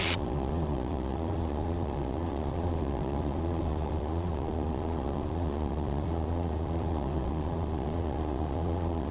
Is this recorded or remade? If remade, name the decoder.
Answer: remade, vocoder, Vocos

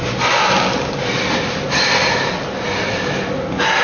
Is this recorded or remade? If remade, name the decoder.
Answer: recorded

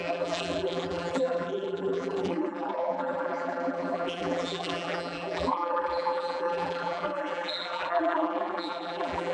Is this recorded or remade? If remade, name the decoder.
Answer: remade, vocoder, BigVGAN v2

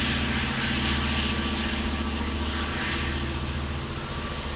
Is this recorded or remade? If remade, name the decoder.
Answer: recorded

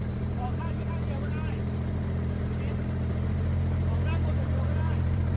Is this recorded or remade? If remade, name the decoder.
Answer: remade, vocoder, BigVGAN v2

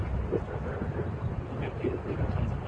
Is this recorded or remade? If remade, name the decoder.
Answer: recorded